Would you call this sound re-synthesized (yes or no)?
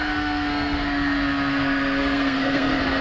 yes